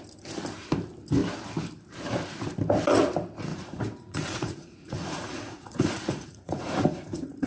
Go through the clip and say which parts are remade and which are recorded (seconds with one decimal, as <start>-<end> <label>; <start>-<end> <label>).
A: 0.0-3.5 recorded; 3.5-7.5 remade